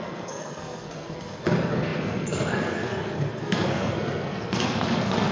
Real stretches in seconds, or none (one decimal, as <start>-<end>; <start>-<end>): none